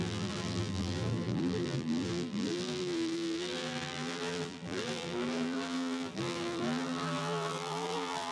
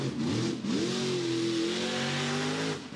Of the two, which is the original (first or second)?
second